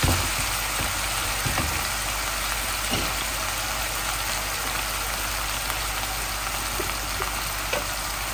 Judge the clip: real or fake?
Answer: real